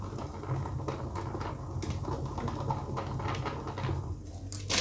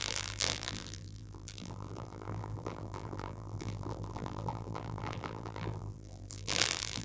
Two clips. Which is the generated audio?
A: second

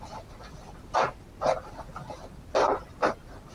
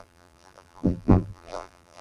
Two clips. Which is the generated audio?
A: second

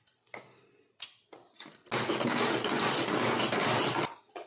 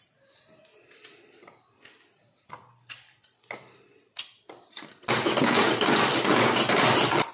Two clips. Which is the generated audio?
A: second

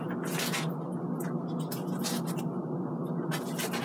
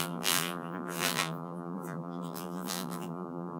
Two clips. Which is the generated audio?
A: second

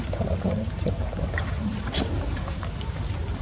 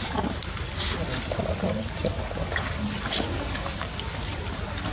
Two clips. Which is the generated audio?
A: first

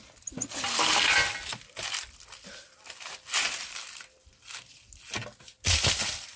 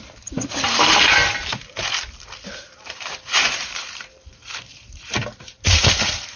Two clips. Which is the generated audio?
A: second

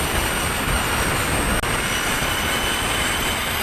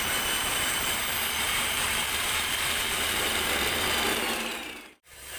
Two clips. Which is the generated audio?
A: second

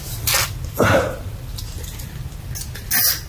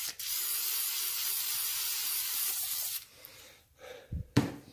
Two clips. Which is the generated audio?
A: second